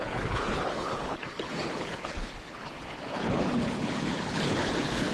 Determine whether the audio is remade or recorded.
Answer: remade